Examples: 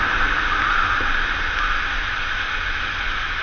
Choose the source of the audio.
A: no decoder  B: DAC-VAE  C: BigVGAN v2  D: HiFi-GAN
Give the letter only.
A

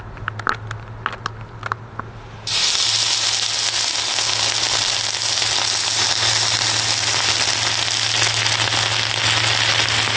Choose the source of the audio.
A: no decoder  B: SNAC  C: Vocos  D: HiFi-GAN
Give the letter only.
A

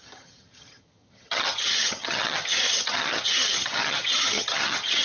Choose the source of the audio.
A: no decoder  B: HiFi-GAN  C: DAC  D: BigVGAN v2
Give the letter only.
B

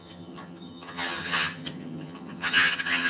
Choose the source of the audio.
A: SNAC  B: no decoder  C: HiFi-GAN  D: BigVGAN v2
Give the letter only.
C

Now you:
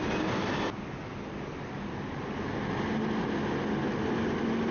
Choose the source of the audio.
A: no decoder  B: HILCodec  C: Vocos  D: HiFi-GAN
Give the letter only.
A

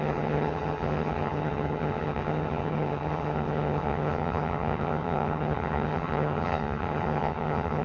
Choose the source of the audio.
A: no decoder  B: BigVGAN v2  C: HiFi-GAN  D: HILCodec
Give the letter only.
C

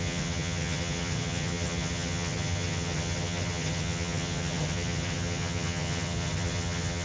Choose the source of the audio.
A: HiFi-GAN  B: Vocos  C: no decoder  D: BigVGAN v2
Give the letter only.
A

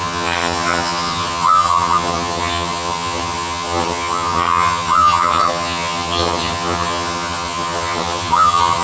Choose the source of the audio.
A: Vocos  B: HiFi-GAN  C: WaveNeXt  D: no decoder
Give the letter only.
B